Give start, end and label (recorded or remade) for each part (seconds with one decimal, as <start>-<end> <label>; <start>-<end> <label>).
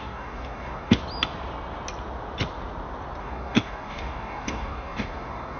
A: 0.0-1.0 remade; 1.0-3.2 recorded; 3.2-5.6 remade